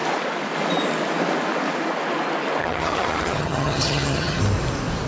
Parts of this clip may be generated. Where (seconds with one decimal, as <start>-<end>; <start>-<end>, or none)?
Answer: 2.6-4.4